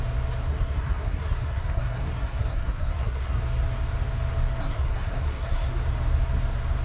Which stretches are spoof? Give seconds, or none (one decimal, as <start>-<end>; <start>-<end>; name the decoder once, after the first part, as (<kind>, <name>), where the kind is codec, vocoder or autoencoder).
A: 0.5-3.4 (codec, SNAC); 4.6-5.7